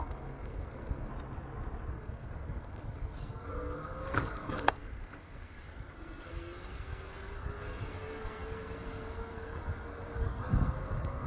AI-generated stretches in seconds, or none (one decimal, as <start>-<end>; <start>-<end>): 0.0-1.1; 1.9-11.3